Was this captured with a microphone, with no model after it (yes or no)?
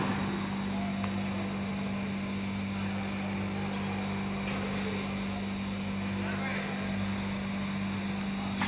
yes